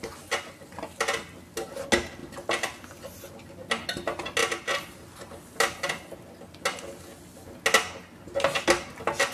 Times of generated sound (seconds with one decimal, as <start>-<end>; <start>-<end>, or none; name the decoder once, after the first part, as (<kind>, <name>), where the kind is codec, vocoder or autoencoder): 4.4-5.4 (vocoder, BigVGAN v2)